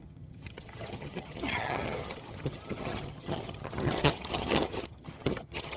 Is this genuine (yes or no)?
no